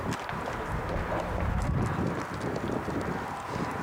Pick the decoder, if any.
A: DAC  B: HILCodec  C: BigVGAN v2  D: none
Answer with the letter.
D